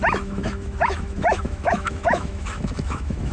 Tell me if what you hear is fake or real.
fake